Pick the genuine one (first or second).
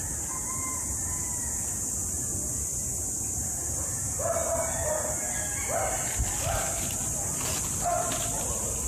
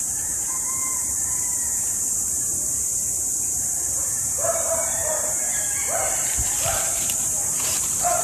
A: first